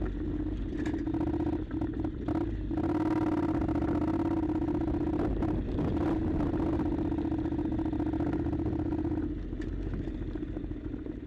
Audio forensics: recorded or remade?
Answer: recorded